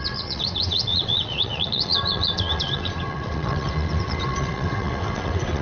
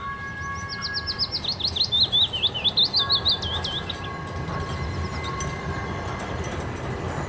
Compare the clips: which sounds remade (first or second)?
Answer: first